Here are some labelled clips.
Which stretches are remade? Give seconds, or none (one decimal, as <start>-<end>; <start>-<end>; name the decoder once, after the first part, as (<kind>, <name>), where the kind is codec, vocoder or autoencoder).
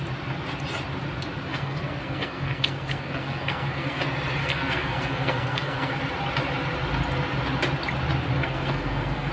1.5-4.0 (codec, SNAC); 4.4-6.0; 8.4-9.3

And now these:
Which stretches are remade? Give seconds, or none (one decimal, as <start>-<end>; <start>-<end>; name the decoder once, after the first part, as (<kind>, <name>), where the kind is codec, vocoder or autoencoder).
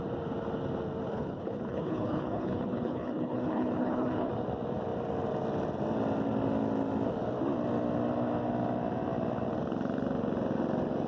1.1-4.3 (codec, HILCodec)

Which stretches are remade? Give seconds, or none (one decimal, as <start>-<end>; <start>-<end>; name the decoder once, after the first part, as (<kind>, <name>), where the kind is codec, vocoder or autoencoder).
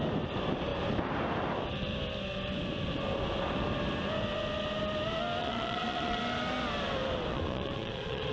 5.4-6.2 (vocoder, Vocos); 7.3-8.3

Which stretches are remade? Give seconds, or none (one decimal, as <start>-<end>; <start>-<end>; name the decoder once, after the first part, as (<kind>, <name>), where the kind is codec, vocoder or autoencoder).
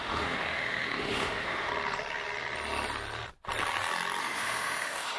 0.0-1.7 (autoencoder, DAC-VAE); 4.2-5.2